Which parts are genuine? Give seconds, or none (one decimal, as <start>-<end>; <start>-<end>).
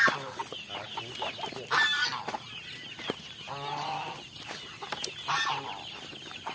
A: 0.0-6.5